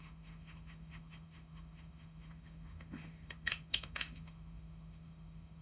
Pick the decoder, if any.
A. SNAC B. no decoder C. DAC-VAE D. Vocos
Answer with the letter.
C